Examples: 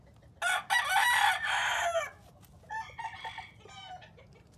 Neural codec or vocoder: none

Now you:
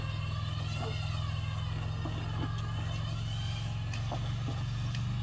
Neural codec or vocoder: none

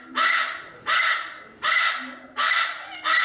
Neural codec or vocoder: none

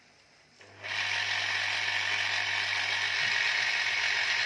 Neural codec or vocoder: none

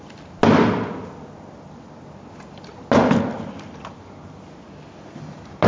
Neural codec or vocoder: none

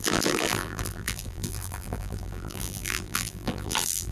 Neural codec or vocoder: vocoder, BigVGAN v2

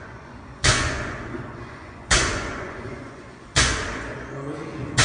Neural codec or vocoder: vocoder, Vocos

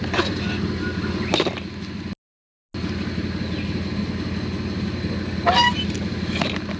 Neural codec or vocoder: none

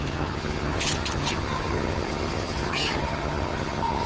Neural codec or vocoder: vocoder, HiFi-GAN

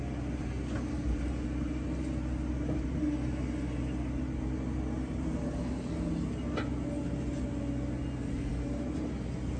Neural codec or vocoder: none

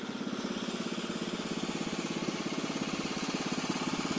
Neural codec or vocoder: none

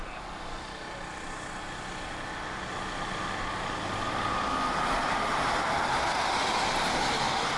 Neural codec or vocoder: none